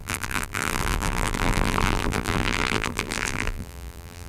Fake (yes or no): yes